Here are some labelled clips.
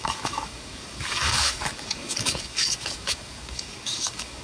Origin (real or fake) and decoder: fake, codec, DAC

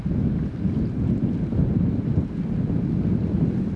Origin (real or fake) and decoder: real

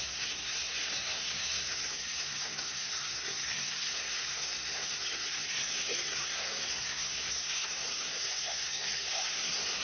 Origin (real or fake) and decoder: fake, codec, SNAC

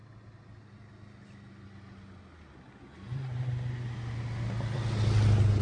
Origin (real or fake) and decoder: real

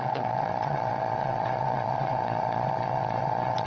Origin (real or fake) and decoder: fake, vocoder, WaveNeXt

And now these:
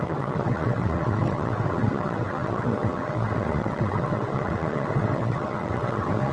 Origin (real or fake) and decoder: fake, vocoder, WaveNeXt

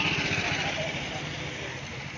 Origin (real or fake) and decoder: real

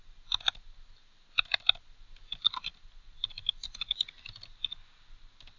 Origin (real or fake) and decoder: real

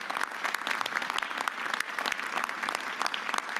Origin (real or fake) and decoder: real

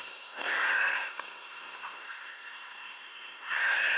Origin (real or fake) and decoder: fake, codec, SNAC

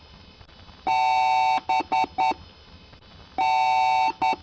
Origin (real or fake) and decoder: real